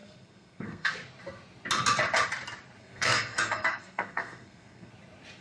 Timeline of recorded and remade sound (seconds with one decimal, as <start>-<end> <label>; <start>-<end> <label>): 0.0-0.9 remade; 0.9-2.8 recorded; 2.8-4.9 remade; 4.9-5.4 recorded